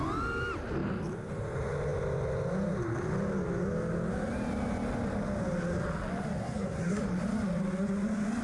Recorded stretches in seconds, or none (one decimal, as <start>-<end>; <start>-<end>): 0.0-6.4; 7.0-8.4